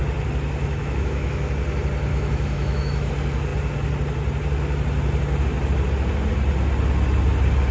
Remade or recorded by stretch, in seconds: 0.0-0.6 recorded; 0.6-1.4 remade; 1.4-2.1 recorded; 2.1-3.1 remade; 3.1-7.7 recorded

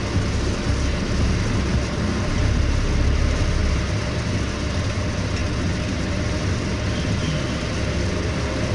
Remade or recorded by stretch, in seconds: 0.0-8.7 recorded

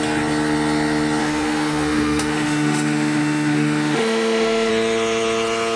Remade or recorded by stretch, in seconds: 0.0-1.2 recorded; 1.2-4.7 remade; 4.7-5.8 recorded

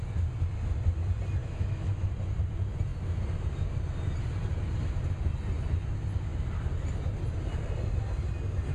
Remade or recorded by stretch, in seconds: 0.0-1.4 recorded; 1.4-2.1 remade; 2.1-8.7 recorded

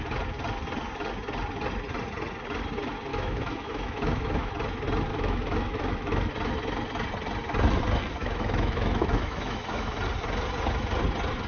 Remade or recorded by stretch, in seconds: 0.0-3.1 recorded; 3.1-4.5 remade; 4.5-5.1 recorded; 5.1-6.3 remade; 6.3-8.2 recorded; 8.2-10.0 remade; 10.0-11.5 recorded

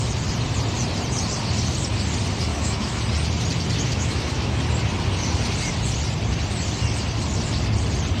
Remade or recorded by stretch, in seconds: 0.0-2.5 recorded; 2.5-3.0 remade; 3.0-3.9 recorded; 3.9-4.6 remade; 4.6-8.2 recorded

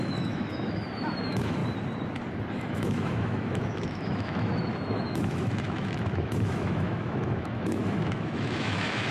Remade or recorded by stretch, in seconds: 0.0-1.6 remade; 1.6-2.5 recorded; 2.5-9.1 remade